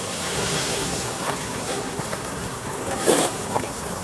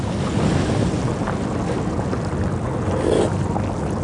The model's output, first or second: first